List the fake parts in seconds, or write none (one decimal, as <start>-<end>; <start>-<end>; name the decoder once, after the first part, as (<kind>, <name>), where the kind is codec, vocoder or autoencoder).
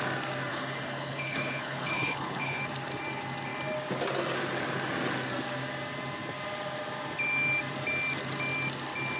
0.5-2.6 (codec, HILCodec)